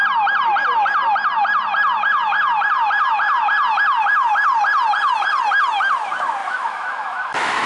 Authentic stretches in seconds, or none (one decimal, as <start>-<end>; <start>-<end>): 0.0-6.4